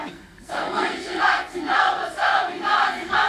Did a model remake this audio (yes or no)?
yes